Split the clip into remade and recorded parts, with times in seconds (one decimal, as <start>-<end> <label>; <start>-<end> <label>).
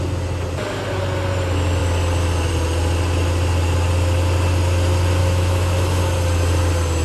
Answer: 0.0-5.2 recorded; 5.2-6.0 remade; 6.0-7.0 recorded